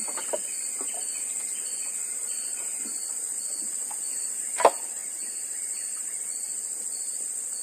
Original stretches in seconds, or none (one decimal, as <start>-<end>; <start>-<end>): 0.0-7.6